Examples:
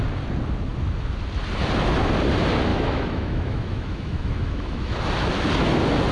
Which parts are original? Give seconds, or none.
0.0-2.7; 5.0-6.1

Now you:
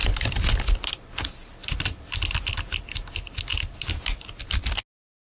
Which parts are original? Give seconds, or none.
0.9-1.6; 2.5-3.5; 4.0-5.3

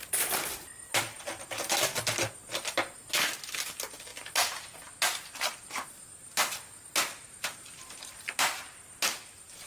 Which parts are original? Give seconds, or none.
0.0-9.7

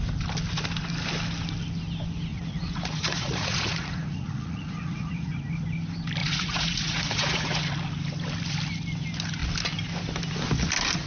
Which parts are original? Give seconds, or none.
0.0-2.3; 5.3-6.2; 7.6-11.1

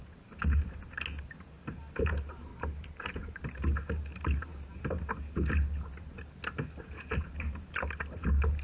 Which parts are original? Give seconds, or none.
0.0-2.5; 3.4-8.6

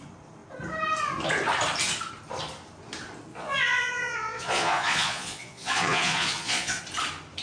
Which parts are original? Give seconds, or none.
0.0-3.3; 6.8-7.4